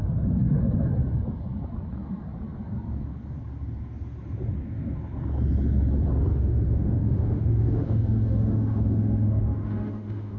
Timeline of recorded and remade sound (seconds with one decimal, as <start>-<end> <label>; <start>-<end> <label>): 0.0-6.3 recorded; 6.3-10.4 remade